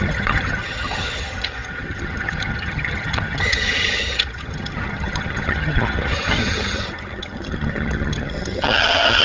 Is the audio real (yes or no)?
no